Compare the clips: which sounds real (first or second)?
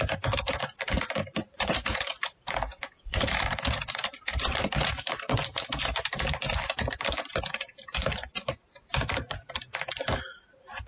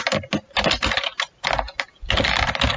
second